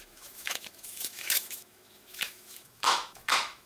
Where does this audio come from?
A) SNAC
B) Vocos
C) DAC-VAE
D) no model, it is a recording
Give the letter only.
C